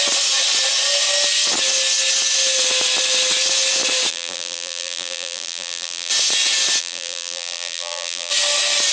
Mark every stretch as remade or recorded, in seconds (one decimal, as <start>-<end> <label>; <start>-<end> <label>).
0.0-4.1 recorded; 4.1-6.1 remade; 6.1-6.8 recorded; 6.8-8.3 remade; 8.3-8.9 recorded